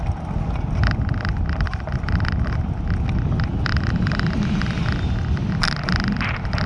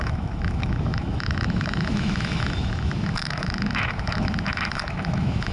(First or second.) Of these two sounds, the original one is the first